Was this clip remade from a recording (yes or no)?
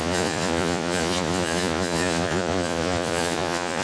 yes